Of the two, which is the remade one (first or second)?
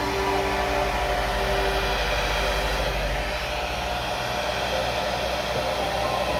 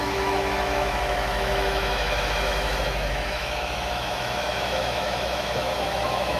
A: second